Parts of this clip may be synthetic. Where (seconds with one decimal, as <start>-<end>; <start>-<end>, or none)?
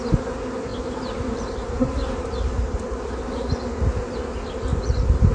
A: 0.7-3.5; 4.7-5.3